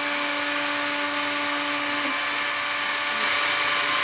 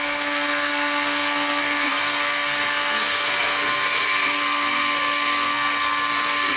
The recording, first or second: first